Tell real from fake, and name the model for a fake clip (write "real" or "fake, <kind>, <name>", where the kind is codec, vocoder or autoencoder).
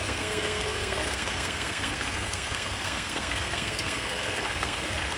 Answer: fake, codec, SNAC